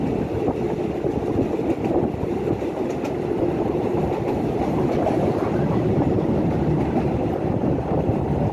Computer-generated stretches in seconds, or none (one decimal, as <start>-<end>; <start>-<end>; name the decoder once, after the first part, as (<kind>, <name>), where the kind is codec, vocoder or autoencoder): 3.9-6.6 (vocoder, BigVGAN v2)

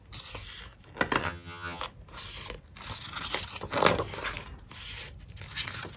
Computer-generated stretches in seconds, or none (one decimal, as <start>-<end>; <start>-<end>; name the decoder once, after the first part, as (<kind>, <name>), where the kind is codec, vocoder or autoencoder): 1.2-1.8 (vocoder, HiFi-GAN)

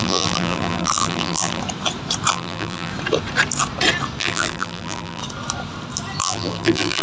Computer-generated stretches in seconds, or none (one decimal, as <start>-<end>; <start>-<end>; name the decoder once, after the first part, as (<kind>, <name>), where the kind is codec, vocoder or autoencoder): 0.0-1.6 (vocoder, BigVGAN v2); 2.3-2.9; 4.2-5.2; 6.2-7.0